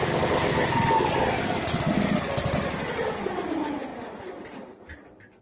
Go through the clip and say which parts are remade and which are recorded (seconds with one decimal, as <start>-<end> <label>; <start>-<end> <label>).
0.0-5.4 recorded